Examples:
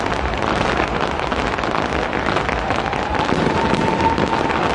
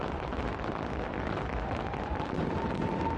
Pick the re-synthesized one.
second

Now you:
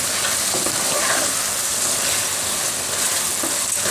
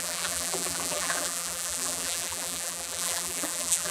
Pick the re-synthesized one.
second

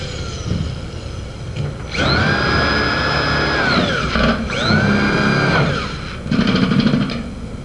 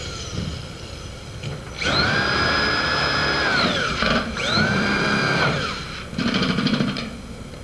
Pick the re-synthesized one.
second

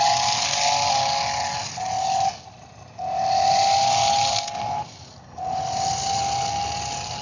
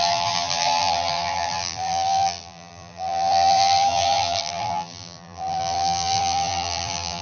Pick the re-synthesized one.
second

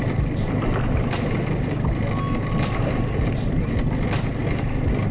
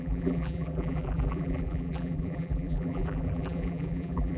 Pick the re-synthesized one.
second